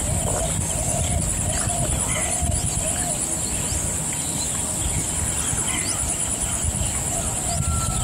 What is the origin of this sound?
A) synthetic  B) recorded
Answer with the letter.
B